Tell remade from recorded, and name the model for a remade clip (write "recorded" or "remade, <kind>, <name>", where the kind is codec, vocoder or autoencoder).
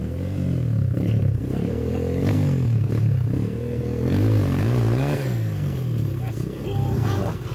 remade, codec, SNAC